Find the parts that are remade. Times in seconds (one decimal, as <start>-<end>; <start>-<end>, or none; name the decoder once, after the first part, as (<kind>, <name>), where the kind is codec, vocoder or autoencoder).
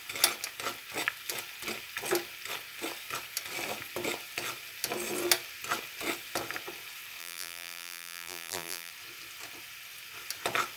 7.2-8.9 (vocoder, BigVGAN v2)